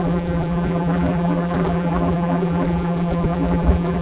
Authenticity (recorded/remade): remade